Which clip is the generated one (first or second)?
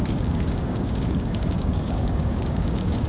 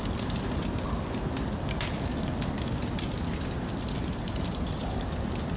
first